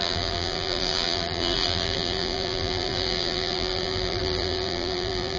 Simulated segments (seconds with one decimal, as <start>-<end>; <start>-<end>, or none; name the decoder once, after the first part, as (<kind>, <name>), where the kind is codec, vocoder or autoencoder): 0.0-5.4 (vocoder, BigVGAN v2)